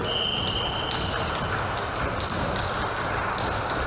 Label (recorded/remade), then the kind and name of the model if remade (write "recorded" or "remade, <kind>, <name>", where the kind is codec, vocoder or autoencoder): recorded